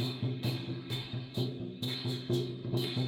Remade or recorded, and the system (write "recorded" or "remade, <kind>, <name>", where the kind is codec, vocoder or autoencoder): remade, autoencoder, DAC-VAE